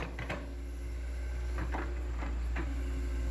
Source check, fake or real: real